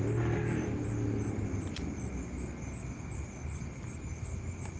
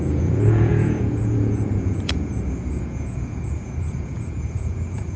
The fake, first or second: second